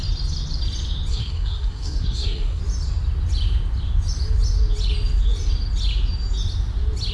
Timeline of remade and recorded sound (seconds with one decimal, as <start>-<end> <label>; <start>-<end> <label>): 0.0-1.1 recorded; 1.1-2.6 remade; 2.6-7.1 recorded